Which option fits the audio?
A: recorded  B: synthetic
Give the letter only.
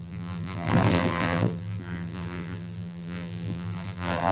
B